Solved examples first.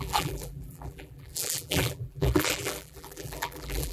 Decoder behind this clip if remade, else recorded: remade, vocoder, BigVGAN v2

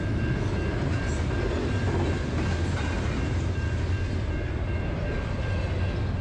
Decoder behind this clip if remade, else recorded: recorded